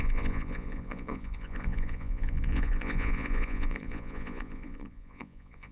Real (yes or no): no